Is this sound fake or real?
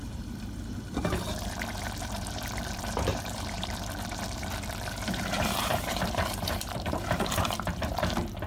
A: fake